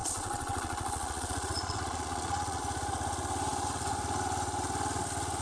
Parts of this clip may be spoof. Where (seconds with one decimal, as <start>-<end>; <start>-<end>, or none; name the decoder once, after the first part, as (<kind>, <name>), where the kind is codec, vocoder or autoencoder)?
0.0-2.6 (vocoder, Vocos)